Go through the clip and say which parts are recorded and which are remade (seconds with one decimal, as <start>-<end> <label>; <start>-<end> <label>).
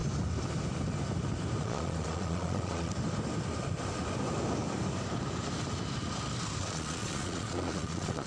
0.0-1.6 recorded; 1.6-2.9 remade; 2.9-6.6 recorded; 6.6-8.3 remade